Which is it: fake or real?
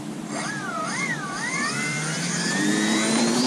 fake